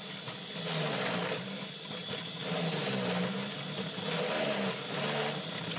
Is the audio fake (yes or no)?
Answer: no